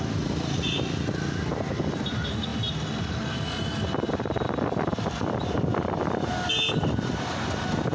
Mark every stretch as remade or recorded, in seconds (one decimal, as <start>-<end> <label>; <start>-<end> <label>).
0.0-7.9 recorded